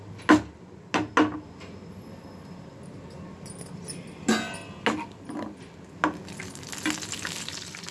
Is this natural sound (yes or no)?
yes